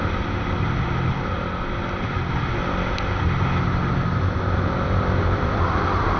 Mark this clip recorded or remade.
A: recorded